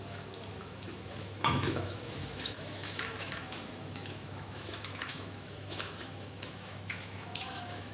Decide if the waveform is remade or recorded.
remade